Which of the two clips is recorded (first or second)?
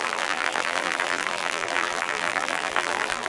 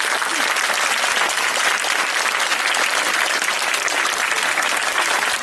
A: second